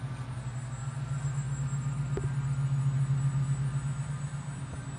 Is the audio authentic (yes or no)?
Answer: yes